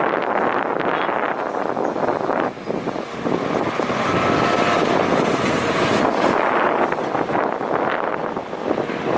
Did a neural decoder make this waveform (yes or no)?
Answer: no